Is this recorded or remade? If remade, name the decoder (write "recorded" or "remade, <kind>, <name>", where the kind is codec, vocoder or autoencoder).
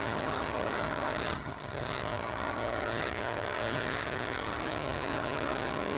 remade, vocoder, HiFi-GAN